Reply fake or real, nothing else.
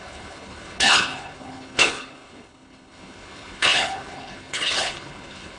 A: fake